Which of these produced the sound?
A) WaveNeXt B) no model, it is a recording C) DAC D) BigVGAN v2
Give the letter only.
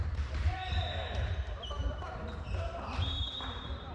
D